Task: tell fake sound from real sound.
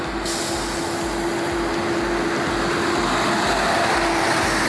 real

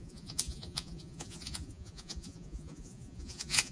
fake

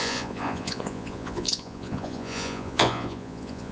fake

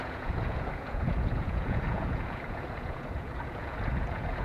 fake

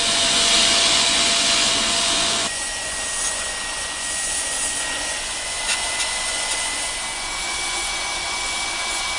fake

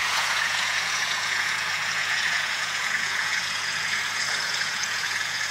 fake